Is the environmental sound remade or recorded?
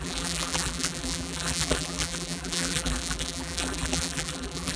remade